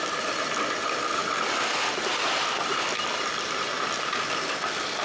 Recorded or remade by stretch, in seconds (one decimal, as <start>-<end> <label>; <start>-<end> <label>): 0.0-5.0 recorded